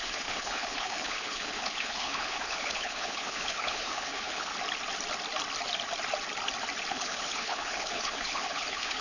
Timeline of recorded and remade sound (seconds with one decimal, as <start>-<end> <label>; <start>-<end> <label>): 0.0-4.5 remade; 4.5-6.9 recorded; 6.9-9.0 remade